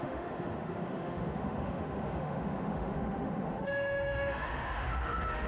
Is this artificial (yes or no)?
yes